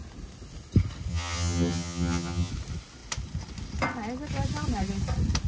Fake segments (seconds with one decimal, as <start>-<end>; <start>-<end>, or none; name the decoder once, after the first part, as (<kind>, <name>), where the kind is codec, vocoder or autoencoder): 1.1-2.5 (vocoder, HiFi-GAN)